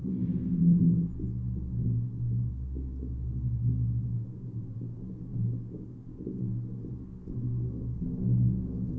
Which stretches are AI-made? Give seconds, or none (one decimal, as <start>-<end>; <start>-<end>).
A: none